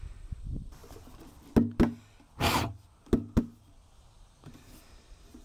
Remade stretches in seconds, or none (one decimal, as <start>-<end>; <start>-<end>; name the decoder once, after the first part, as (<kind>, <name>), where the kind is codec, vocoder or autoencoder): none